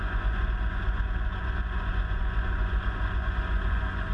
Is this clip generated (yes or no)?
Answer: yes